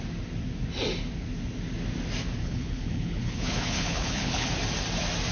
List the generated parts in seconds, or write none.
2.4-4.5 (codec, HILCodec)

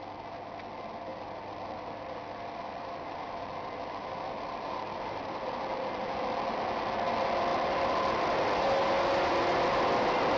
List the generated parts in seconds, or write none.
1.1-5.7 (vocoder, BigVGAN v2); 7.5-8.1

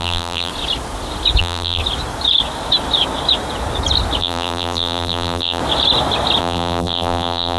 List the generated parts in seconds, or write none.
0.0-0.5 (vocoder, BigVGAN v2); 1.4-1.8; 4.2-5.6; 6.4-7.6